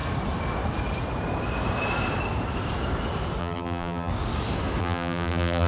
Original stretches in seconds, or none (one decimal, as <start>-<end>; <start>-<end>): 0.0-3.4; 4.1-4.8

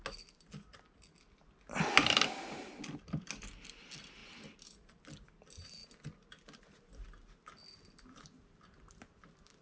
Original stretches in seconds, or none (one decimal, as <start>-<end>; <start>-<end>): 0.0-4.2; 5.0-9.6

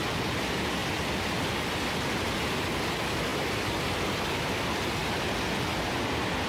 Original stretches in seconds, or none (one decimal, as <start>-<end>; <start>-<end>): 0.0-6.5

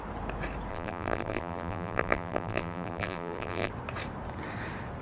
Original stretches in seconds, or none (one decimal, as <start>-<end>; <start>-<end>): 0.0-0.7; 3.7-5.0